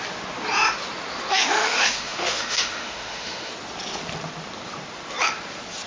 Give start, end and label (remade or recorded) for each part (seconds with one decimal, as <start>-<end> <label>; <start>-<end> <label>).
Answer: 0.0-1.3 recorded; 1.3-3.5 remade; 3.5-5.9 recorded